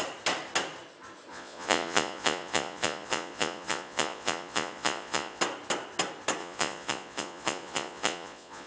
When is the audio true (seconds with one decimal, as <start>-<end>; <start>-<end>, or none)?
0.0-1.3; 5.4-6.4